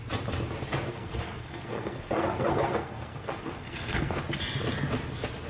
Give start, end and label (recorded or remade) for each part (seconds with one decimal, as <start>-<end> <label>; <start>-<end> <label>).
0.0-0.9 recorded; 0.9-4.2 remade; 4.2-5.5 recorded